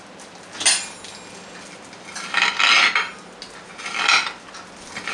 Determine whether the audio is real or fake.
real